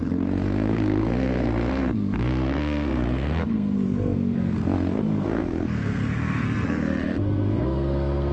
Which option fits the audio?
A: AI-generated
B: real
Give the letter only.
A